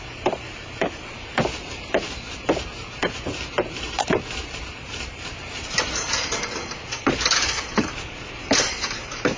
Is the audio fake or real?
fake